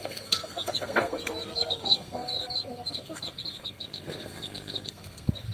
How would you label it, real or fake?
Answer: fake